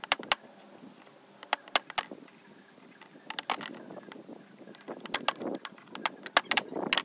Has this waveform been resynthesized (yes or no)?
no